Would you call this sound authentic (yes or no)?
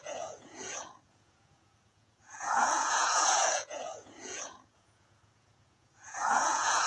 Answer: no